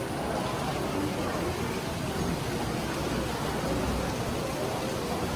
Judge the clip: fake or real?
real